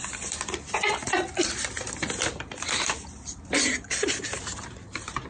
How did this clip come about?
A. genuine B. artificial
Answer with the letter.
B